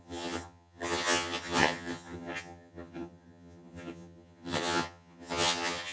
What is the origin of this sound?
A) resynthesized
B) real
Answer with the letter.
A